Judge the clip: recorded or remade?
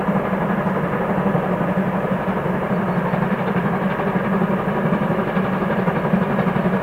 recorded